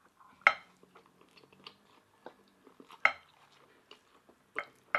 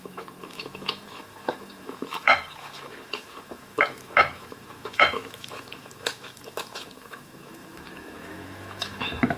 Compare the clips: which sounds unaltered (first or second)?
first